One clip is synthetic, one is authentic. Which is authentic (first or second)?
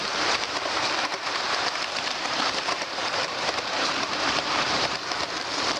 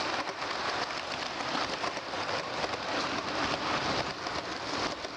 second